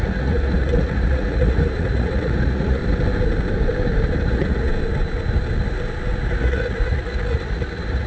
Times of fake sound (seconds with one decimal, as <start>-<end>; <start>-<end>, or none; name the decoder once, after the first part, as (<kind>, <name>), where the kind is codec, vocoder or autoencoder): 0.0-2.8 (vocoder, Vocos); 4.2-4.7; 6.3-8.1